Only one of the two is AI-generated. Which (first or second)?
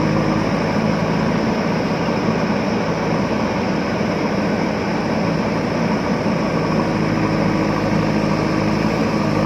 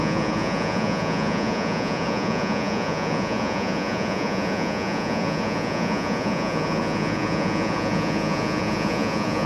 second